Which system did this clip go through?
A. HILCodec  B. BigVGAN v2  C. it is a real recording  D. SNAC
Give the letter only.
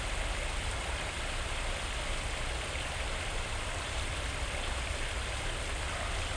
C